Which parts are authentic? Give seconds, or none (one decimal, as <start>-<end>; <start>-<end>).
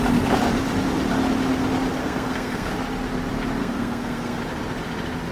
0.0-2.0; 2.7-3.6; 4.4-5.3